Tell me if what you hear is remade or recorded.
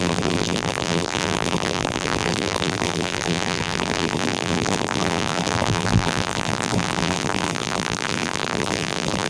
remade